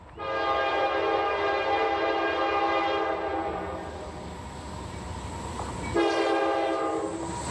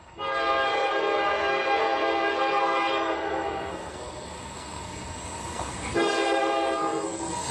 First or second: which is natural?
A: first